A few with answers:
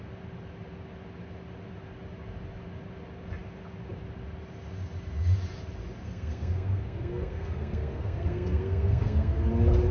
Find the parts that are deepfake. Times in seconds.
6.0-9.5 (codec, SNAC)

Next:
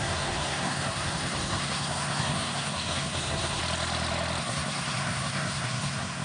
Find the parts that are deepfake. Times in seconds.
0.0-3.6 (codec, SNAC); 4.4-6.2

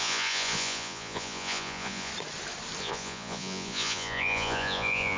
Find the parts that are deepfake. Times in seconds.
0.0-2.1 (vocoder, Vocos); 2.8-5.2

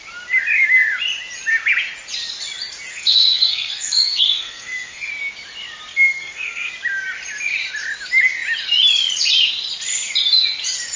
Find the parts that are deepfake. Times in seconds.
2.9-5.1 (codec, SNAC); 5.9-6.7